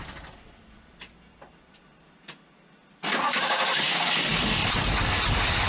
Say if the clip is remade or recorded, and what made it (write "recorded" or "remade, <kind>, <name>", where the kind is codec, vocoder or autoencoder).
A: recorded